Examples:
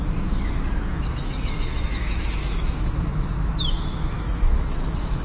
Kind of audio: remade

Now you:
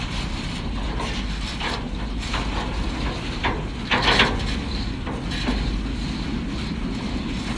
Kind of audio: recorded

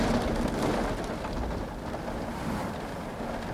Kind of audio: recorded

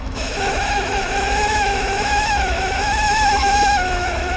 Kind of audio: remade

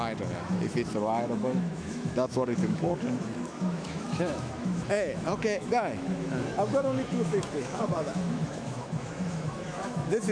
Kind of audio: remade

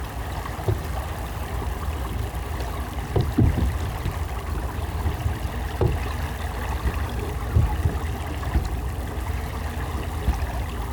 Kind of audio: recorded